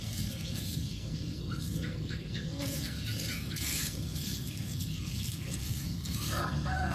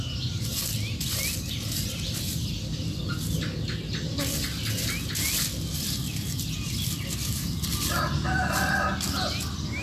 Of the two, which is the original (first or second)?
second